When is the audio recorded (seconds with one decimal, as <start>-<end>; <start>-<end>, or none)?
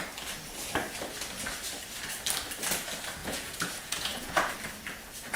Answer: 0.0-3.2; 4.5-5.4